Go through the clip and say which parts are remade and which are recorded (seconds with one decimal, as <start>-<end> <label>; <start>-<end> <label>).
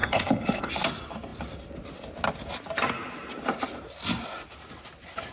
0.0-0.7 remade; 0.7-5.3 recorded